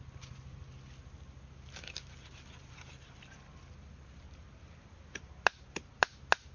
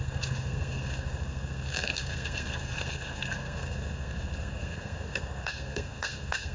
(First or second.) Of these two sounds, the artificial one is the second